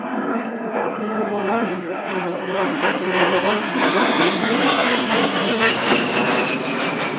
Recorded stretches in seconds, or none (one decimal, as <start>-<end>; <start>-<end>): 5.7-7.2

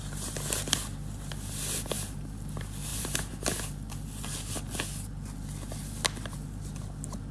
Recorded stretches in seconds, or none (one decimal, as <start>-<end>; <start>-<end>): 0.0-2.9; 3.5-7.3

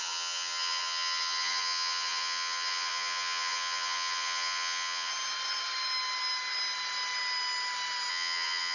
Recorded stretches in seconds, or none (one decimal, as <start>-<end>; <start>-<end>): 5.1-8.1